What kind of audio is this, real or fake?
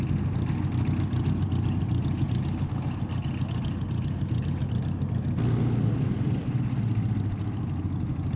real